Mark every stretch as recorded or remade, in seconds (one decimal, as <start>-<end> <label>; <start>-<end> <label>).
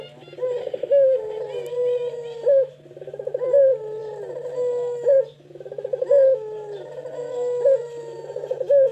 0.0-0.6 recorded; 0.6-1.4 remade; 1.4-8.9 recorded